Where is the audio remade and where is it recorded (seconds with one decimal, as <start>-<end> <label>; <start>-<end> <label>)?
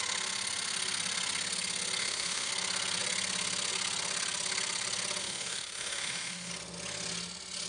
0.0-2.0 recorded; 2.0-2.5 remade; 2.5-5.2 recorded; 5.2-6.5 remade; 6.5-7.7 recorded